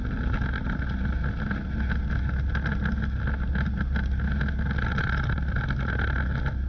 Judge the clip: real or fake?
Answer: real